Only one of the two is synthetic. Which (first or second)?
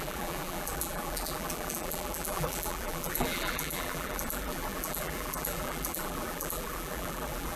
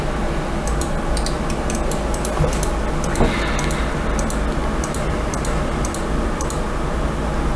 first